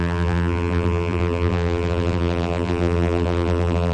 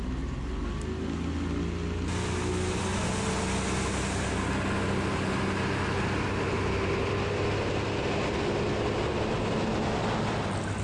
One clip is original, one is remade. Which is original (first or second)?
second